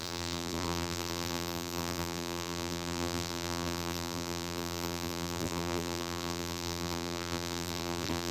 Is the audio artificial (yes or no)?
yes